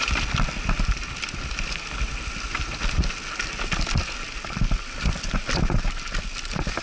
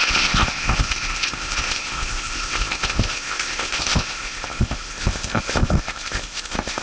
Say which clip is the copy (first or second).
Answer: second